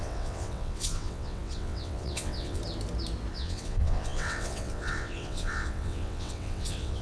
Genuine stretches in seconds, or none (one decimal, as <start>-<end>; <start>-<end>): 2.6-3.3